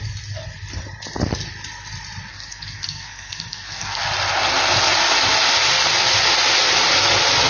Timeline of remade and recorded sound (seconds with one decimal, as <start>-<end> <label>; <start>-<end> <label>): 0.0-2.3 recorded; 2.3-4.0 remade; 4.0-7.5 recorded